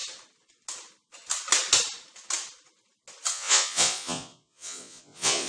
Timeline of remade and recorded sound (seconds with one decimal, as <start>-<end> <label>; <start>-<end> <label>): 0.0-3.3 recorded; 3.3-5.5 remade